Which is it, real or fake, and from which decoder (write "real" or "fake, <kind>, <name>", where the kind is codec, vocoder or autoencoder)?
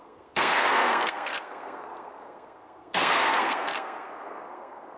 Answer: fake, codec, SNAC